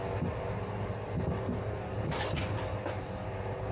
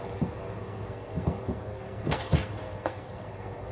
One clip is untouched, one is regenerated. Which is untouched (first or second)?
first